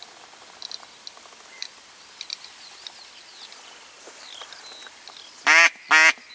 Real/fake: real